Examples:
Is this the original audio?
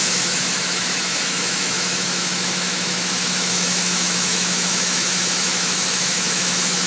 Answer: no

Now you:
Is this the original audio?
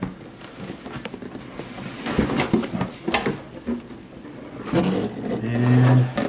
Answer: yes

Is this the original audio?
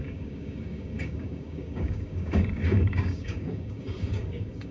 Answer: no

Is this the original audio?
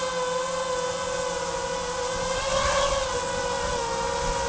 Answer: yes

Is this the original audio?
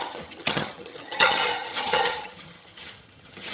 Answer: no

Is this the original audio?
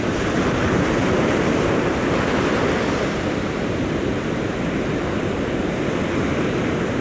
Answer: yes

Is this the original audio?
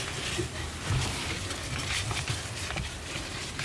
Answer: yes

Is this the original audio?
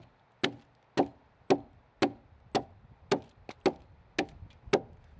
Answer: yes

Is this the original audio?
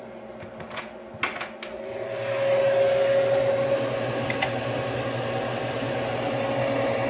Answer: yes